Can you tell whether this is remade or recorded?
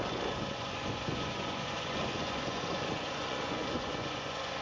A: remade